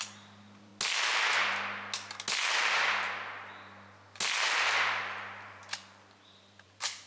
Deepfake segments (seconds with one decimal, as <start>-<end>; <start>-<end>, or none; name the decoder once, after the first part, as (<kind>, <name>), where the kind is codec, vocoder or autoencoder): 0.0-0.7 (vocoder, BigVGAN v2); 5.0-7.1